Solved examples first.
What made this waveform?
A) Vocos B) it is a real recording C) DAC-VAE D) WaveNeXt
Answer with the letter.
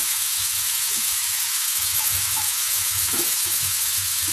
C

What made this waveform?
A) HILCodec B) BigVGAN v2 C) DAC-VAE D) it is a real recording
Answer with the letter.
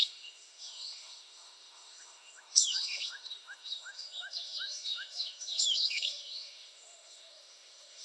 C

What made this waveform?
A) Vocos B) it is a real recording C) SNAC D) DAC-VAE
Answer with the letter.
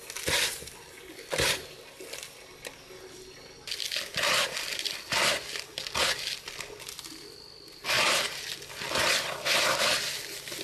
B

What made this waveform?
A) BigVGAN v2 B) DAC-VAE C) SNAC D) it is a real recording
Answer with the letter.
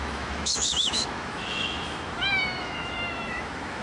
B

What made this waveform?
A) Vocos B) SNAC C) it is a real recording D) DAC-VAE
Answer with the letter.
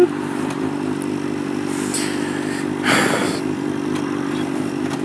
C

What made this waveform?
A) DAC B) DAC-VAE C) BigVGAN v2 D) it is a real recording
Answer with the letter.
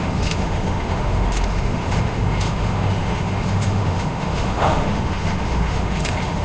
B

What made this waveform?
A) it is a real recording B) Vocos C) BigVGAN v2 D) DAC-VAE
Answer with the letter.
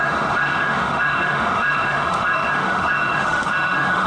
D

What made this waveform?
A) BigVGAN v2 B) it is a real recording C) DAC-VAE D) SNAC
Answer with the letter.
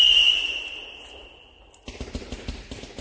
B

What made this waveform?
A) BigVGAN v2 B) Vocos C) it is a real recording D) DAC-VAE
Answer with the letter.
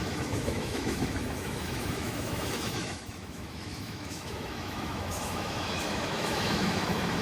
D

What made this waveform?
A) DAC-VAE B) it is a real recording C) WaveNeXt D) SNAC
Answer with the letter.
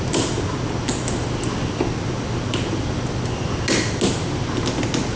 B